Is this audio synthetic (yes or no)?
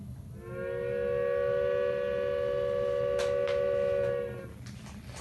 no